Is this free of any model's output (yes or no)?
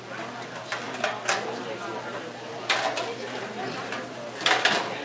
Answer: yes